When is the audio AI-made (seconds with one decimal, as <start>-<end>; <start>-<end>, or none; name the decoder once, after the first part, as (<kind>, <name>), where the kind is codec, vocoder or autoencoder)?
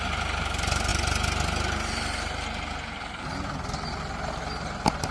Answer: none